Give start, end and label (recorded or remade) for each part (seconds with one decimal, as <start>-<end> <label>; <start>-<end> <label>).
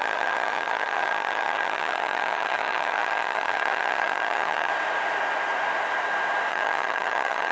0.0-4.7 remade; 4.7-6.5 recorded; 6.5-7.5 remade